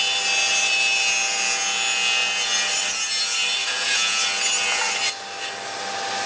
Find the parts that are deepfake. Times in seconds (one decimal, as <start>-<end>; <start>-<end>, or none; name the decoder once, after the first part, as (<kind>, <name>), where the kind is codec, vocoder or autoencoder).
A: 3.6-4.2 (vocoder, Vocos)